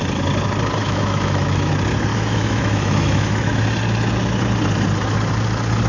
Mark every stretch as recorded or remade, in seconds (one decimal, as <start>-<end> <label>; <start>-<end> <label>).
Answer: 0.0-0.8 recorded; 0.8-1.7 remade; 1.7-2.1 recorded; 2.1-3.6 remade; 3.6-5.9 recorded